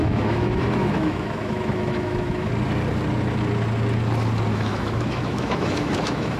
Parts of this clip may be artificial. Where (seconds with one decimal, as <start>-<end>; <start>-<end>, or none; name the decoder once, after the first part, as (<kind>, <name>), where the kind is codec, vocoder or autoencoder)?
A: 0.0-2.5 (autoencoder, DAC-VAE); 4.5-6.4